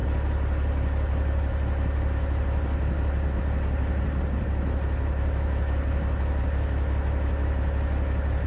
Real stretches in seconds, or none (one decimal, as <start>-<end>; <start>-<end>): 0.0-8.5